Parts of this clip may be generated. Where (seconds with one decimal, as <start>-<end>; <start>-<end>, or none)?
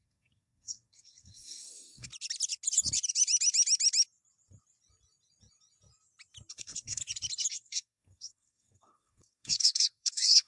0.0-2.1; 6.5-7.0; 7.5-10.5